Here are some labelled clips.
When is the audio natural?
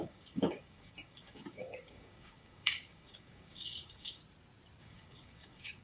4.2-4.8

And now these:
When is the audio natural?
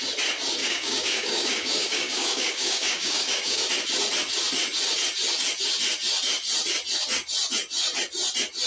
0.0-0.6; 3.7-8.7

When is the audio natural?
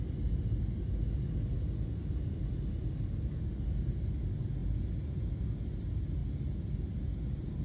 0.0-7.6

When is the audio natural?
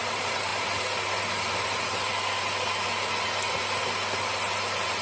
0.0-5.0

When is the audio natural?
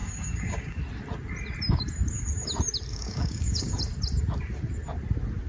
0.8-2.9; 3.8-5.5